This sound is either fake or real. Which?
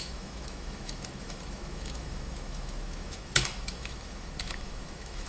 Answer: fake